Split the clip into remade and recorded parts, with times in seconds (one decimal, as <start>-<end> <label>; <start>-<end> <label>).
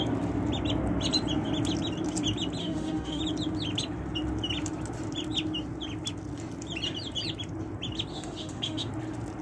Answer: 0.0-2.6 recorded; 2.6-3.2 remade; 3.2-8.1 recorded; 8.1-8.9 remade; 8.9-9.4 recorded